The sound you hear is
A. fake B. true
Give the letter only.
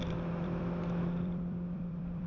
A